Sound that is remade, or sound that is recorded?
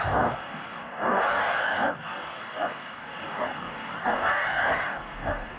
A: remade